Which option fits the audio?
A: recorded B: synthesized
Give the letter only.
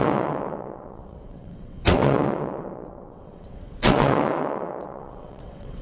B